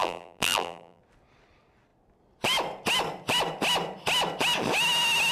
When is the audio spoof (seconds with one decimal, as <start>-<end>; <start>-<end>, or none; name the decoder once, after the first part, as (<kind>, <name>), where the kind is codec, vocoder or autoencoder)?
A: 0.0-1.0 (vocoder, BigVGAN v2)